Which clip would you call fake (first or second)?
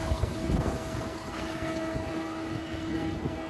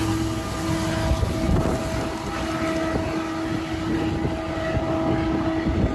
first